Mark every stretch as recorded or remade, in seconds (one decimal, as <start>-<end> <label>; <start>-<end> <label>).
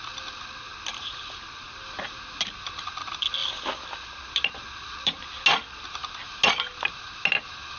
0.0-7.8 recorded